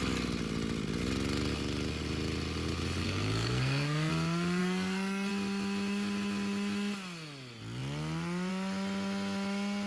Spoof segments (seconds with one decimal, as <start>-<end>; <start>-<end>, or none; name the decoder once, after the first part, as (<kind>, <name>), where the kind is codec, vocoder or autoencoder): 3.0-4.1 (codec, SNAC); 4.6-5.3